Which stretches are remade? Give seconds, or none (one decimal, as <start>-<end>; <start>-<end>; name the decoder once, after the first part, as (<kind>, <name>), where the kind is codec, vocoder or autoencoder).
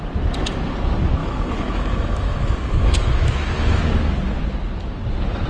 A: 1.2-3.8 (autoencoder, DAC-VAE)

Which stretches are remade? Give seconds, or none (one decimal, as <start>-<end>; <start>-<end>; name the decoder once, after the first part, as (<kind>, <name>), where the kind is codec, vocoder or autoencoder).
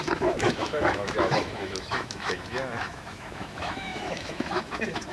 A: 0.0-5.1 (autoencoder, DAC-VAE)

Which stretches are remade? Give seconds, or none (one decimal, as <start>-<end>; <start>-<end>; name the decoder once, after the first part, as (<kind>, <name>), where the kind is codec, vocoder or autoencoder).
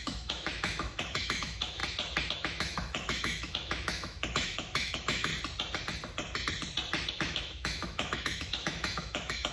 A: 0.0-1.8 (autoencoder, DAC-VAE); 2.3-5.3; 7.1-9.5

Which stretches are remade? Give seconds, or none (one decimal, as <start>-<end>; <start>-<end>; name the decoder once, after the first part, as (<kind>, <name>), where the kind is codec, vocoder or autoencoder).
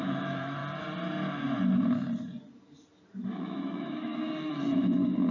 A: 0.0-0.6 (autoencoder, DAC-VAE); 3.3-5.3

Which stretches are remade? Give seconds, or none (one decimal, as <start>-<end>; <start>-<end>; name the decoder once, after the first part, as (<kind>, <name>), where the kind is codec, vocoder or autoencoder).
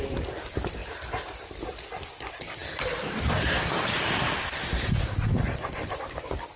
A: none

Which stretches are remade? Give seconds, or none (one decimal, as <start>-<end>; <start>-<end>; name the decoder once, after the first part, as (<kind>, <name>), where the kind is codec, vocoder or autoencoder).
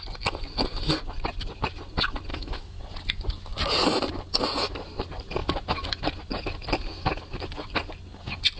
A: 2.3-2.8 (autoencoder, DAC-VAE)